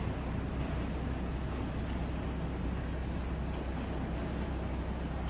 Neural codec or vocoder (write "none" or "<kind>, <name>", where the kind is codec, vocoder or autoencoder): none